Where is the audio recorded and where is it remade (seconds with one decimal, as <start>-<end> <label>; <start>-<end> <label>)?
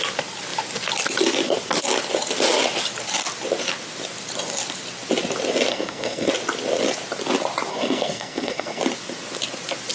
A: 0.0-5.7 recorded; 5.7-6.3 remade; 6.3-7.7 recorded; 7.7-8.8 remade; 8.8-9.9 recorded